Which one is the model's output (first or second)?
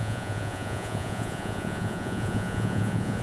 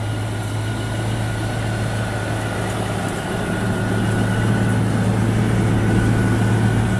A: first